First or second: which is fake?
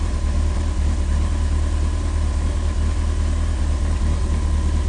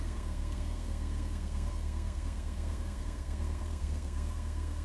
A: second